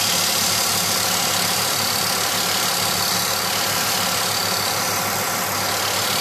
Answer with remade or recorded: recorded